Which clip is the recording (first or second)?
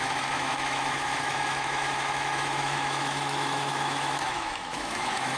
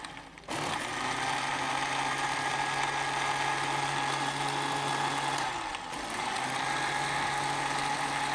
second